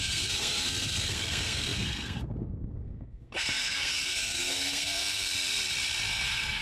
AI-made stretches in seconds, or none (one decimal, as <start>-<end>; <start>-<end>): 0.0-5.3; 6.1-6.6